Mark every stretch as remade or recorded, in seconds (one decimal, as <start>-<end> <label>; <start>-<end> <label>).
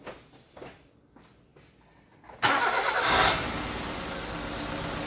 0.0-5.1 recorded